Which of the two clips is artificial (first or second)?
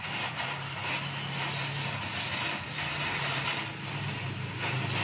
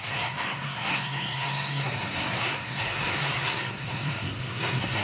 second